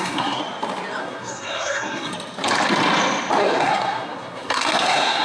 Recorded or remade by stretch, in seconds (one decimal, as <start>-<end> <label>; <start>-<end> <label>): 0.0-0.4 remade; 0.4-1.0 recorded; 1.0-2.1 remade; 2.1-3.4 recorded; 3.4-5.2 remade